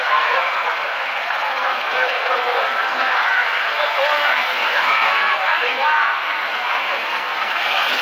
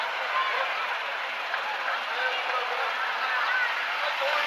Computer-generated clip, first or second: first